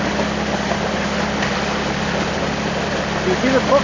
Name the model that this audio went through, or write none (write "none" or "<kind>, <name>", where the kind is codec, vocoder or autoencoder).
none